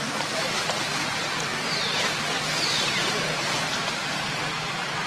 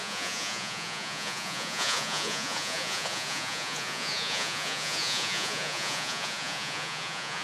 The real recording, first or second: first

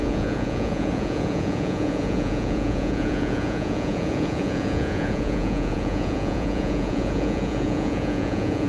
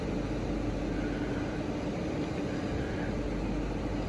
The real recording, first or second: second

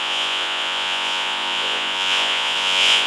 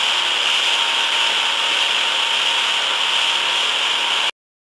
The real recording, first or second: second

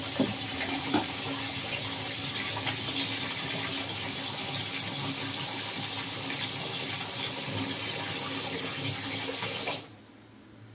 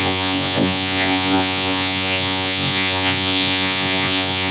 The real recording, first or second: first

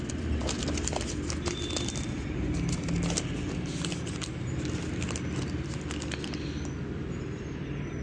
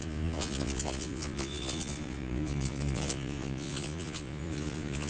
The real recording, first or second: first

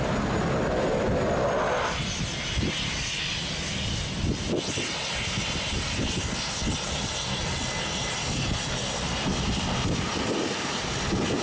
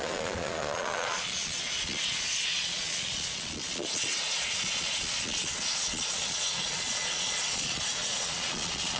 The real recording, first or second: first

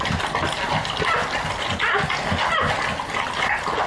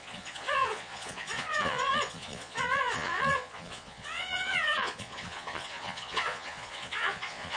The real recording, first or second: first